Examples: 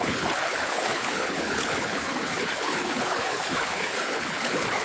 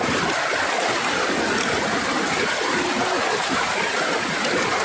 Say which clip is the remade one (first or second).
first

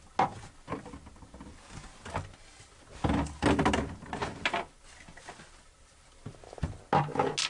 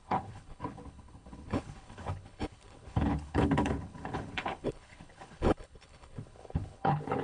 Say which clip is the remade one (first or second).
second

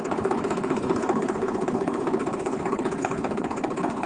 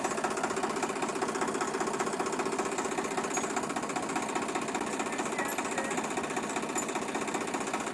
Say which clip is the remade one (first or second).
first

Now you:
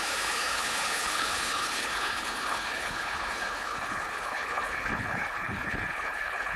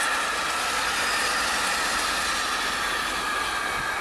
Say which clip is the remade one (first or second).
first